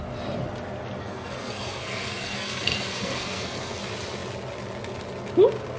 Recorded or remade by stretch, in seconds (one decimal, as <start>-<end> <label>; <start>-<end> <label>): 0.0-1.0 recorded; 1.0-3.8 remade; 3.8-5.8 recorded